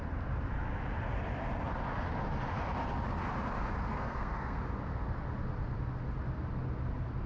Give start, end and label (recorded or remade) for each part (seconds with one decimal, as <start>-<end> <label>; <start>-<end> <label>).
0.0-3.9 recorded; 3.9-4.6 remade; 4.6-7.3 recorded